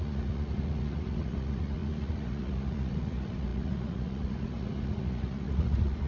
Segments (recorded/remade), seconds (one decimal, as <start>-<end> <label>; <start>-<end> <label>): 0.0-6.1 remade